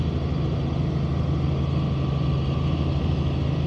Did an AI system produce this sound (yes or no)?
no